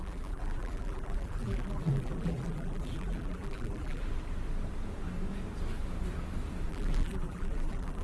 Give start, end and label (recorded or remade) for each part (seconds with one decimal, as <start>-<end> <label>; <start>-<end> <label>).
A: 0.0-4.0 remade; 4.0-6.7 recorded; 6.7-8.0 remade